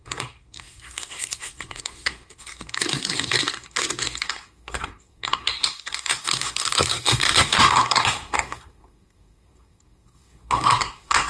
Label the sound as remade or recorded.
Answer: remade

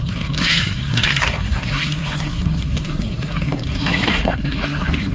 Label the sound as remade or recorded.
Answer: remade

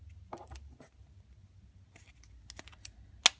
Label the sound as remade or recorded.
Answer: recorded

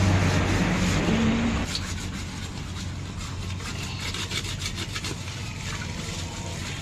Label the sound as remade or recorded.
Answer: recorded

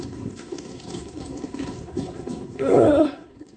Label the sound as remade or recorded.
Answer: remade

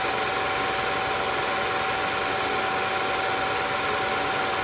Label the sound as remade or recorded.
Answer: recorded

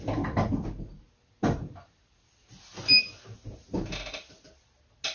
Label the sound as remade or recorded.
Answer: recorded